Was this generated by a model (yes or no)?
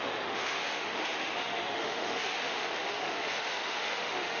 yes